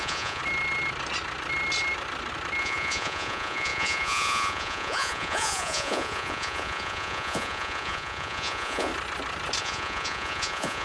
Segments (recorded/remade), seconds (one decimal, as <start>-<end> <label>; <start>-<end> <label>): 0.0-0.4 remade; 0.4-2.6 recorded; 2.6-8.9 remade; 8.9-9.6 recorded; 9.6-10.8 remade